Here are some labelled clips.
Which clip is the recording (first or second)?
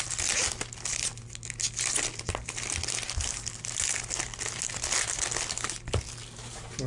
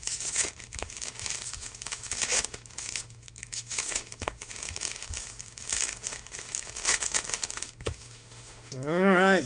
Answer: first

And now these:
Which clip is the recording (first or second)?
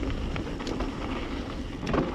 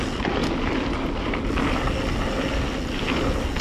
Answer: second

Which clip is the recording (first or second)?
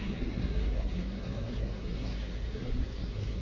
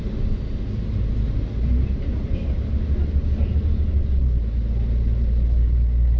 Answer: second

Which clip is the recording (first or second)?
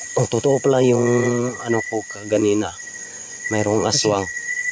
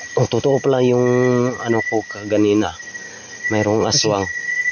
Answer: second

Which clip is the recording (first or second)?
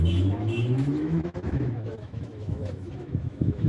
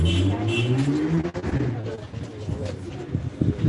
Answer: second